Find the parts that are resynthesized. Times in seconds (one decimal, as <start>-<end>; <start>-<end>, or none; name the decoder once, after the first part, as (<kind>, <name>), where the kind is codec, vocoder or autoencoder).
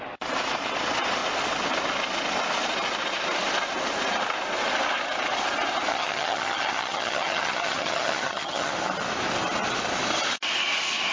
5.9-8.7 (vocoder, HiFi-GAN)